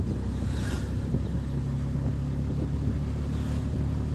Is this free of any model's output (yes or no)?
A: yes